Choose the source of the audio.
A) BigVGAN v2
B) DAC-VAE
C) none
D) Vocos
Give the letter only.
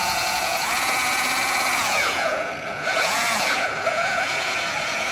D